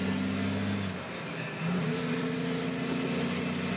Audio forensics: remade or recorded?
recorded